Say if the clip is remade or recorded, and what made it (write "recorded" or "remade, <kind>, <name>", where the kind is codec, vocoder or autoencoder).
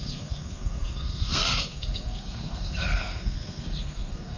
remade, codec, SNAC